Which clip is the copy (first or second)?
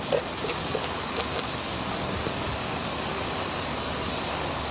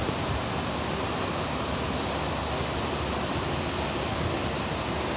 first